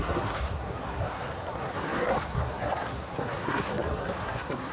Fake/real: fake